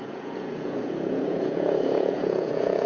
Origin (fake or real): fake